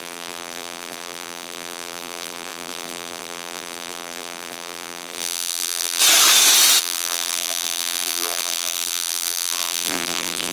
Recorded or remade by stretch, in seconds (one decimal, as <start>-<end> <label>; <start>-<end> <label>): 0.0-6.0 remade; 6.0-6.8 recorded; 6.8-10.5 remade